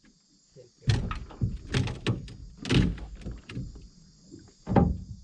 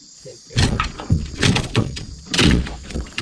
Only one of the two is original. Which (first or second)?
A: first